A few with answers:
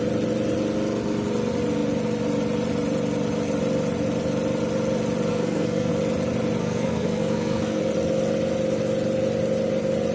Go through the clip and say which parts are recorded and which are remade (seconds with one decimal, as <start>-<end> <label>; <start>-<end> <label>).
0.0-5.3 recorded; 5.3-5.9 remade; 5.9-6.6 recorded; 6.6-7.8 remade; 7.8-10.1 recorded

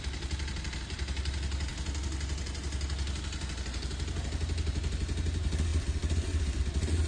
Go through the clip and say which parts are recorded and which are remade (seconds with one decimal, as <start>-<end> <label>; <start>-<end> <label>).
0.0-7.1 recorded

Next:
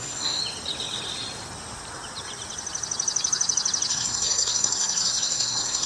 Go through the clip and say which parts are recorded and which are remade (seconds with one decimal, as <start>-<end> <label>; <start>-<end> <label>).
0.0-0.4 remade; 0.4-3.9 recorded; 3.9-5.9 remade

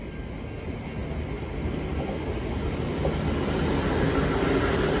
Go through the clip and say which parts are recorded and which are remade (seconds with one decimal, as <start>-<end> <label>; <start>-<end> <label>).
0.0-5.0 recorded

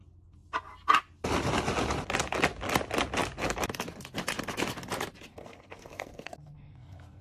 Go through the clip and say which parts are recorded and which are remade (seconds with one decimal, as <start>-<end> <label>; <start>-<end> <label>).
0.0-5.3 recorded; 5.3-7.2 remade

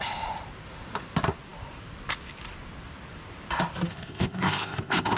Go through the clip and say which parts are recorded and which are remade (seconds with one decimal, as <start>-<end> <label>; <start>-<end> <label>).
0.0-3.9 recorded; 3.9-5.2 remade

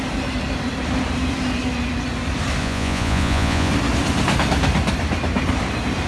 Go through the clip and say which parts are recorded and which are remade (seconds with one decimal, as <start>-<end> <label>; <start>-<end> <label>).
0.0-2.6 recorded; 2.6-3.7 remade; 3.7-6.1 recorded

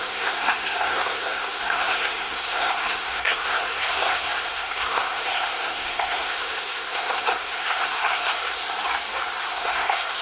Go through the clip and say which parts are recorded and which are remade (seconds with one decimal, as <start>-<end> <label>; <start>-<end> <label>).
0.0-8.6 remade; 8.6-9.5 recorded; 9.5-10.2 remade